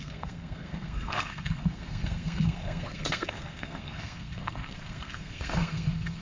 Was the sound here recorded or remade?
remade